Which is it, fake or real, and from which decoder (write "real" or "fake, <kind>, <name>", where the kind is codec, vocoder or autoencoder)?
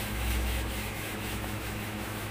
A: fake, autoencoder, DAC-VAE